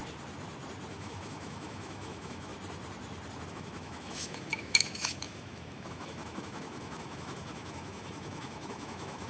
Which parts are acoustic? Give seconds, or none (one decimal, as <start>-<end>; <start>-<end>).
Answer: 0.0-0.9; 2.5-3.5